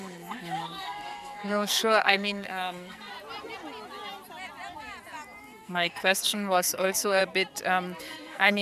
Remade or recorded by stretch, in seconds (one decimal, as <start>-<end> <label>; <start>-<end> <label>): 0.0-3.1 remade; 3.1-5.4 recorded; 5.4-7.2 remade; 7.2-8.0 recorded; 8.0-8.6 remade